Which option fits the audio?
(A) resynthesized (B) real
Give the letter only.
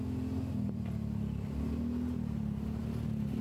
B